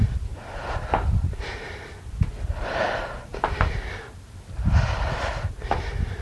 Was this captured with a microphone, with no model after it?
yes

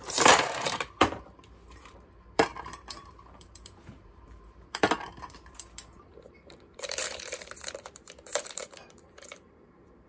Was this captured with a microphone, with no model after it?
no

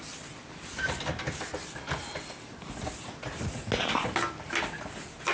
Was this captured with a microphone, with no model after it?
yes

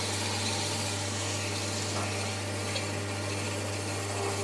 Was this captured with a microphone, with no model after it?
yes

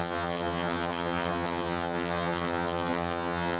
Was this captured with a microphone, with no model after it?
no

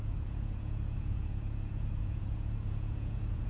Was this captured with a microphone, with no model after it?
no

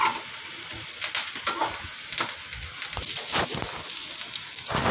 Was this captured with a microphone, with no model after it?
yes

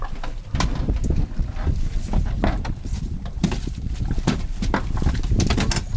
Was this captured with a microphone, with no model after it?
yes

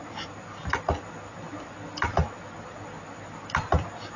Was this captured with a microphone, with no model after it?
yes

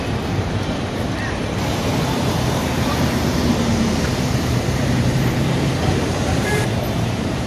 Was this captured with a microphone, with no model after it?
no